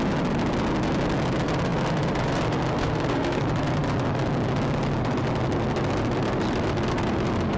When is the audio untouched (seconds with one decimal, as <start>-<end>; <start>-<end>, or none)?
0.0-2.8; 3.4-7.6